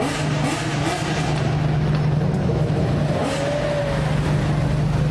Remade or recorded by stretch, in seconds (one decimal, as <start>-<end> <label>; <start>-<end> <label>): 0.0-5.1 recorded